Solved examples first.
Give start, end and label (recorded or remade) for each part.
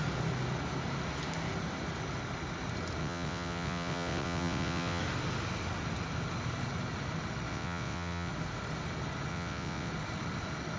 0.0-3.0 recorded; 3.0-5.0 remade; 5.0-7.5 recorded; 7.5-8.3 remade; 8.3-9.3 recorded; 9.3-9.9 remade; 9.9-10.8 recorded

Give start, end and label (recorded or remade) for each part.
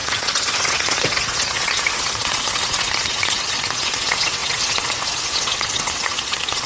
0.0-6.7 remade